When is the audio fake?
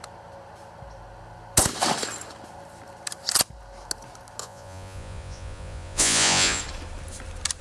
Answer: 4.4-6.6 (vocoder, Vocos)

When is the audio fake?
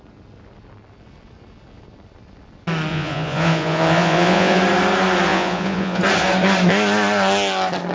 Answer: 2.9-4.6 (vocoder, Vocos); 5.3-6.0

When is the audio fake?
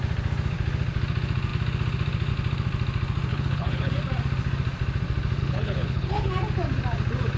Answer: 3.3-3.9 (codec, HILCodec); 5.4-6.3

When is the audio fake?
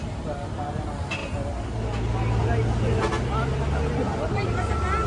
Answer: none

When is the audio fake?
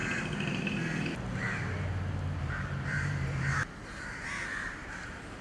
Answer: 2.4-5.4 (vocoder, BigVGAN v2)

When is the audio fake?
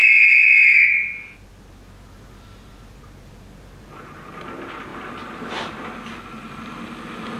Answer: none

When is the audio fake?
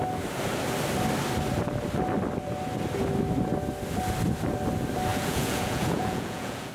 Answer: 5.1-6.7 (vocoder, Vocos)